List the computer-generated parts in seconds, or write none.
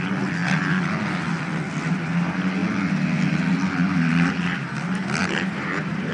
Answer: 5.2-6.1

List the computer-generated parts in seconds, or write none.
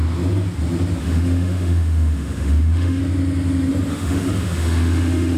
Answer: 1.0-3.0; 3.9-5.4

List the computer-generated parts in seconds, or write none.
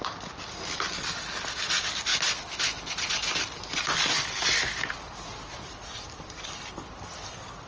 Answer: none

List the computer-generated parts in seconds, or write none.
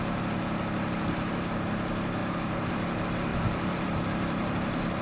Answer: 2.2-2.7; 3.3-5.0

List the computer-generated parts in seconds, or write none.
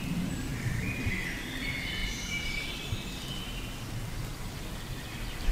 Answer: 0.5-1.6; 2.0-2.7